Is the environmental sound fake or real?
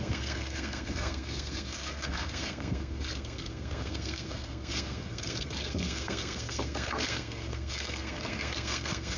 fake